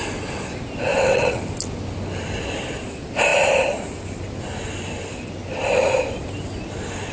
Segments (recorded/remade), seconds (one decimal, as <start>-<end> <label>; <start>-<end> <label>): 0.0-0.9 recorded; 0.9-1.4 remade; 1.4-7.1 recorded